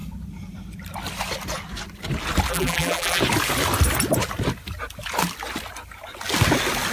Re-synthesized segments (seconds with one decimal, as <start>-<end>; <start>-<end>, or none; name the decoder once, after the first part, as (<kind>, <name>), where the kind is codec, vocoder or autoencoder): 2.5-3.2 (vocoder, BigVGAN v2)